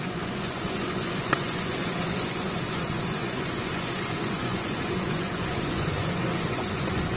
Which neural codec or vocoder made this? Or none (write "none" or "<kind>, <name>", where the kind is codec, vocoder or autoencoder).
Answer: vocoder, Vocos